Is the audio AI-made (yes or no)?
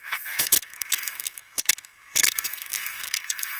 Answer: yes